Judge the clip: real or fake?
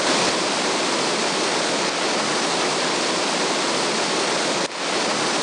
real